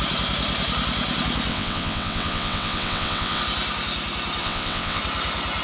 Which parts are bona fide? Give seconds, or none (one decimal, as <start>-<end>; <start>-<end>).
0.0-1.5; 3.4-4.4; 5.0-5.6